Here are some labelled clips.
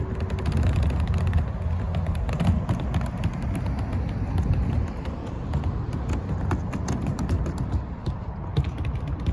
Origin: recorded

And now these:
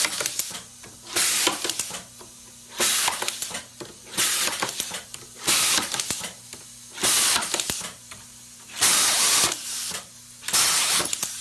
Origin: recorded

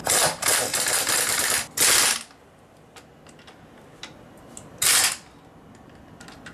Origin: recorded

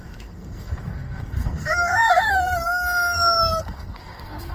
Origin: remade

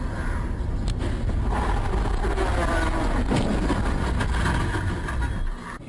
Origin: recorded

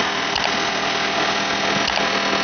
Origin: recorded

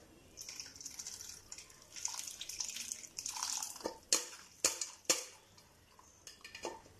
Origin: recorded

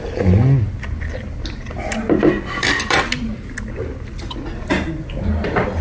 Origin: recorded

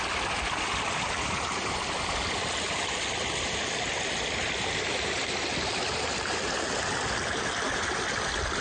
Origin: recorded